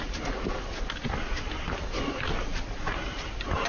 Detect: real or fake real